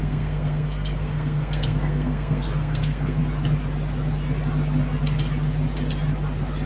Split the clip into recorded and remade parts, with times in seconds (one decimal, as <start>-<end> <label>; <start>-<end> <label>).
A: 0.0-3.2 remade; 3.2-6.7 recorded

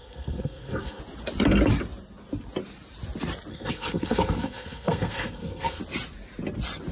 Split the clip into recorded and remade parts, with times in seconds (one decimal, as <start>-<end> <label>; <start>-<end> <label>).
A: 0.0-1.0 remade; 1.0-3.5 recorded; 3.5-5.8 remade; 5.8-6.9 recorded

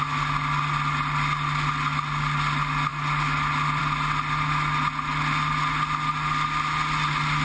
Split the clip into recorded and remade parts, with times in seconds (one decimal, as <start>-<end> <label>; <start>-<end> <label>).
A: 0.0-7.4 recorded

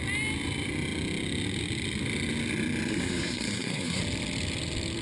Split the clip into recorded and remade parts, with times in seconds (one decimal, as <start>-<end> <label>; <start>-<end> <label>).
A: 0.0-2.9 recorded; 2.9-4.0 remade; 4.0-5.0 recorded

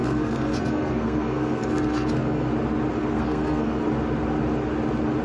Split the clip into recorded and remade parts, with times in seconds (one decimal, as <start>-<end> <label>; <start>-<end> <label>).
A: 0.0-2.5 remade; 2.5-3.0 recorded; 3.0-3.8 remade; 3.8-5.2 recorded

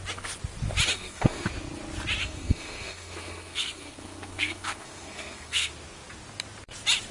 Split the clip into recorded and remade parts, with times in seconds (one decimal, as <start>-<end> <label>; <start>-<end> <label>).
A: 0.0-0.9 recorded; 0.9-1.5 remade; 1.5-2.2 recorded; 2.2-5.7 remade; 5.7-7.1 recorded